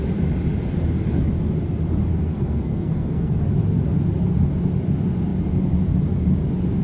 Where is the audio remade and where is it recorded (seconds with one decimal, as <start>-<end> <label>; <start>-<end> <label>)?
0.0-2.1 recorded; 2.1-3.4 remade; 3.4-6.8 recorded

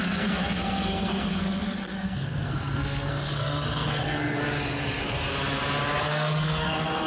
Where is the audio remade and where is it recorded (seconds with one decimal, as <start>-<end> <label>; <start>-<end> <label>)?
0.0-4.4 remade; 4.4-6.0 recorded; 6.0-7.1 remade